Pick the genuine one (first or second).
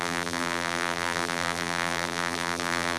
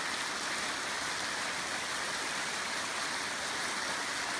second